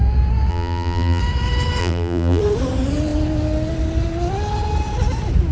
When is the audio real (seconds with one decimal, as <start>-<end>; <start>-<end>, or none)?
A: 0.0-0.5; 1.2-1.8; 2.4-5.5